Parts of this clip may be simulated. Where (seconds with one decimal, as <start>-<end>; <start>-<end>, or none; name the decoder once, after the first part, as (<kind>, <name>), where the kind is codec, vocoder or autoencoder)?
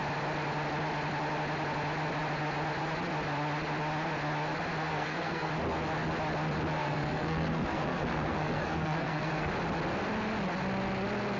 4.9-5.5 (codec, SNAC); 6.8-9.5